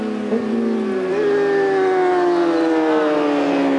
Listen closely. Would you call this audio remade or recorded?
recorded